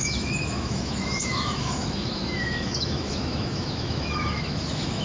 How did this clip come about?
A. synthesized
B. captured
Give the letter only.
A